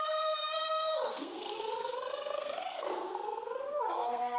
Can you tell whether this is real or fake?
fake